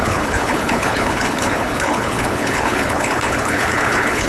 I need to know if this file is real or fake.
fake